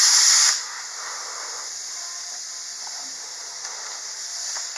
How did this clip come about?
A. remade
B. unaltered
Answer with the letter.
B